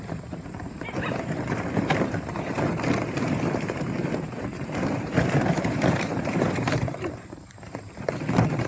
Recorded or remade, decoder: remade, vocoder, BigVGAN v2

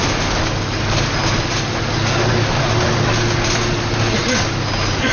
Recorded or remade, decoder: recorded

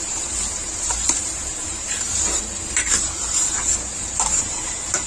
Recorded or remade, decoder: remade, vocoder, BigVGAN v2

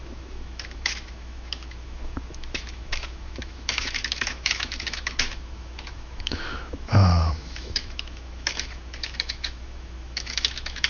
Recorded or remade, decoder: remade, autoencoder, DAC-VAE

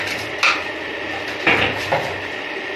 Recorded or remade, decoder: recorded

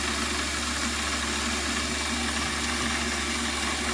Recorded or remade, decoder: recorded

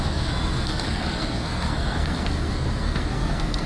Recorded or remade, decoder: remade, codec, SNAC